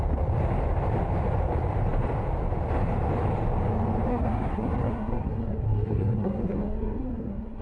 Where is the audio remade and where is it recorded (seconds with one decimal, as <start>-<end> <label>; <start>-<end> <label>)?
0.0-4.1 recorded; 4.1-7.6 remade